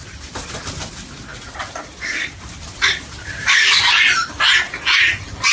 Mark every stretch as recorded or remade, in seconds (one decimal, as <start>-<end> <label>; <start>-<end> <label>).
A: 0.0-1.3 recorded; 1.3-2.6 remade; 2.6-3.2 recorded; 3.2-4.4 remade; 4.4-5.5 recorded